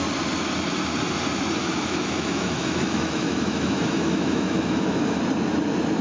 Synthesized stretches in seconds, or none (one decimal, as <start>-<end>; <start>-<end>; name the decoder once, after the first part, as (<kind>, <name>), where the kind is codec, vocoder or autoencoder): 1.6-5.2 (autoencoder, DAC-VAE)